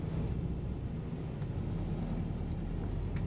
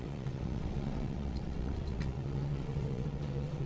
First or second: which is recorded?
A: first